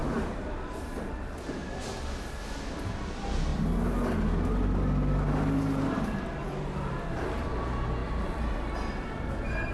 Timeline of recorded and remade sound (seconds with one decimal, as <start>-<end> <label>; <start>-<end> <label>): 0.0-0.8 remade; 0.8-8.0 recorded; 8.0-9.7 remade